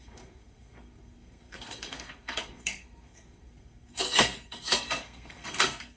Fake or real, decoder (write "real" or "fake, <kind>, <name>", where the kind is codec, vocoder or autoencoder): fake, codec, SNAC